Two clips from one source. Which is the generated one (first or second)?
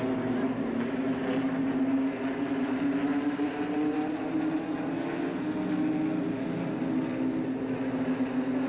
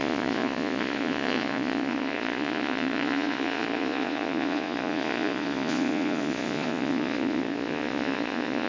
second